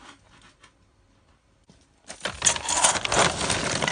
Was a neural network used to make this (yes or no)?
no